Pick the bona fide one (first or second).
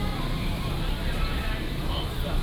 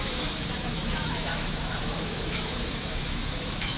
first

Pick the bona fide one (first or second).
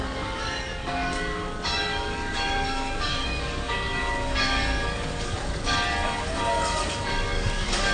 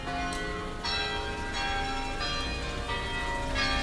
second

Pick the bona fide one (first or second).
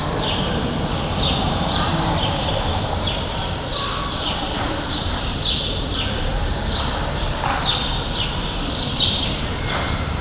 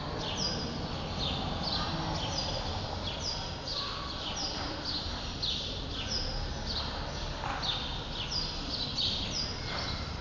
second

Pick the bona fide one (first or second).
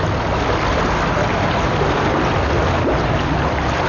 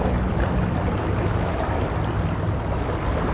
first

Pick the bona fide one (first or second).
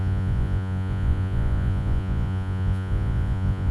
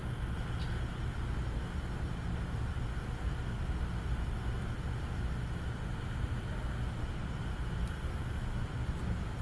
second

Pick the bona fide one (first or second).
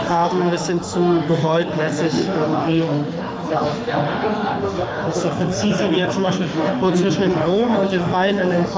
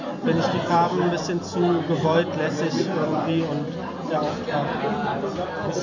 second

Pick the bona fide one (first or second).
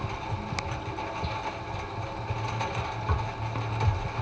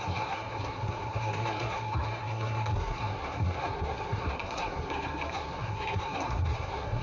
first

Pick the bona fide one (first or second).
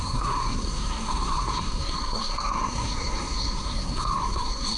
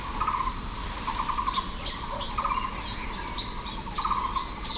second